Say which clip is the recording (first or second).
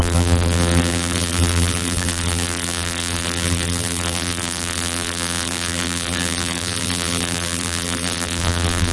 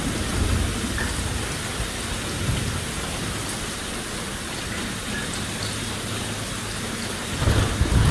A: second